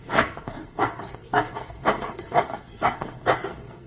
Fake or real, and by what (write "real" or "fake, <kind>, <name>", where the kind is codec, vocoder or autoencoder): fake, codec, SNAC